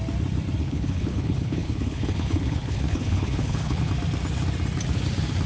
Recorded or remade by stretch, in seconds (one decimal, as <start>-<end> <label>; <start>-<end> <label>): 0.0-0.6 recorded; 0.6-3.9 remade; 3.9-5.5 recorded